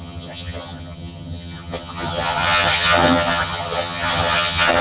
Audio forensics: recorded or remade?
remade